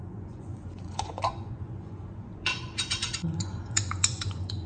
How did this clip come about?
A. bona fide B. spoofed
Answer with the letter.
B